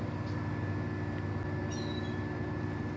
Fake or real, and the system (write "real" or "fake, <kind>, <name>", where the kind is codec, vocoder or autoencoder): real